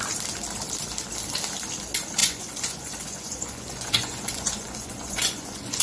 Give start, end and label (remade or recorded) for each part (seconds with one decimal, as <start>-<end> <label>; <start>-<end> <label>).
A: 0.0-2.2 recorded; 2.2-5.8 remade